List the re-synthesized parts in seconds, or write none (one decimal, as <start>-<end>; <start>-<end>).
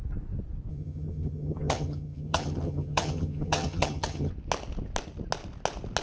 0.7-4.3